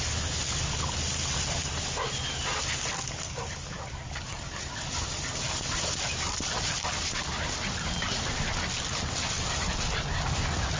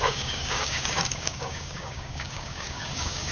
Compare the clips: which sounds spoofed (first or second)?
second